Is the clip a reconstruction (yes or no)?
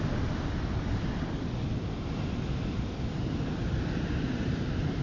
no